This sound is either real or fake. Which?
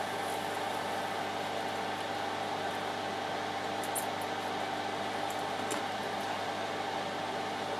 real